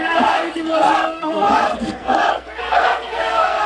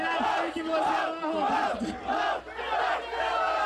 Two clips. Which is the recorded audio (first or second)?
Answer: second